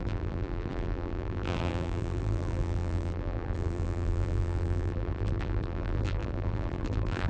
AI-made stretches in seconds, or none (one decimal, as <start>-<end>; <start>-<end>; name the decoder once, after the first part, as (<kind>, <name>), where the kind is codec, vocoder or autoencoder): 0.0-7.3 (vocoder, BigVGAN v2)